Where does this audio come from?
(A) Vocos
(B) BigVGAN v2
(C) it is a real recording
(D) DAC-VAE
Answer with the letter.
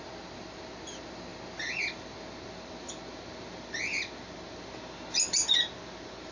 C